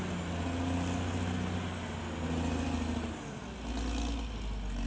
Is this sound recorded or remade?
recorded